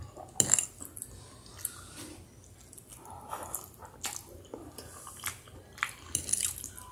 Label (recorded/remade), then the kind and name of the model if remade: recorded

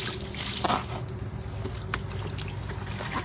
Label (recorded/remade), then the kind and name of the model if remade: recorded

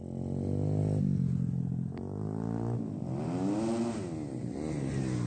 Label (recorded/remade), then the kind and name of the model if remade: recorded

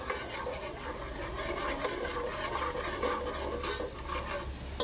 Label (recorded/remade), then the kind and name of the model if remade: recorded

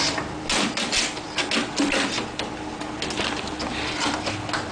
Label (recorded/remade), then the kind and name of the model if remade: recorded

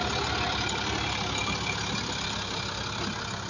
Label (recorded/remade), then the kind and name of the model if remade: recorded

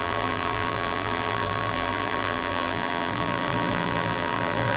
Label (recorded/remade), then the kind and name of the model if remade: remade, vocoder, BigVGAN v2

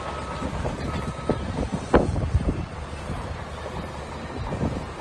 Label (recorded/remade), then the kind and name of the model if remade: recorded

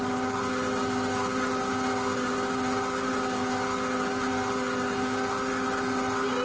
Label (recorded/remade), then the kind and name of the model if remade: recorded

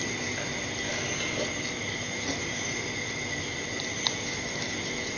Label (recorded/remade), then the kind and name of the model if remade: recorded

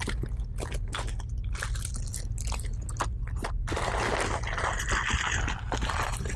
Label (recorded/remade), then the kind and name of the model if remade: recorded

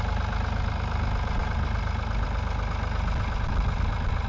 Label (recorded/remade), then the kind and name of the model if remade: recorded